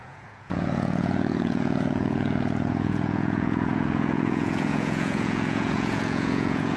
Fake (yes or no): yes